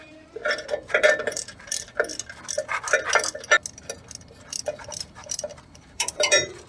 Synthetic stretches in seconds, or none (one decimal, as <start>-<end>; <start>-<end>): 0.0-0.4; 1.0-2.1; 5.0-6.7